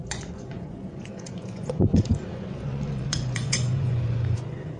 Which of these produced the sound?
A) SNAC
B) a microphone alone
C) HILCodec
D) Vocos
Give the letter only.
D